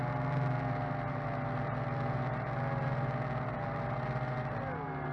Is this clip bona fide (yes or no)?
yes